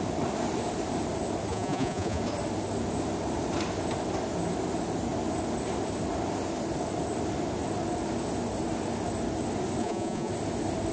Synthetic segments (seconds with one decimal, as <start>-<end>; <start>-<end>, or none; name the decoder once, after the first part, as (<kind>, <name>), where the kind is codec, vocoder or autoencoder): 1.5-2.2 (vocoder, Vocos); 9.8-10.3